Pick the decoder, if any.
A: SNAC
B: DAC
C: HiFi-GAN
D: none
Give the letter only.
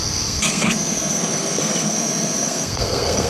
A